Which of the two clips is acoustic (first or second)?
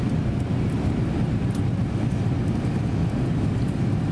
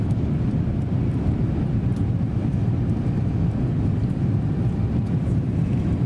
first